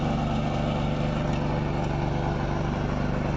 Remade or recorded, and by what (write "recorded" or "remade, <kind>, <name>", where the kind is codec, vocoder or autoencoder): recorded